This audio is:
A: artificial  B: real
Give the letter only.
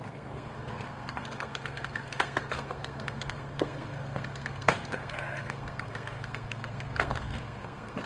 A